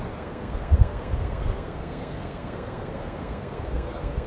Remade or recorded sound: remade